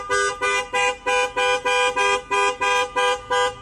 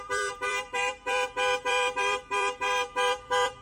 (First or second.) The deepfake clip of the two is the second